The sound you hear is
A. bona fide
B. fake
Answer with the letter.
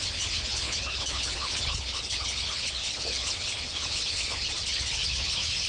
B